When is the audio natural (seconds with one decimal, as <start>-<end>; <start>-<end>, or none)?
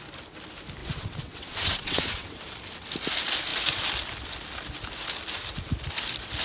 0.0-0.8; 2.4-6.4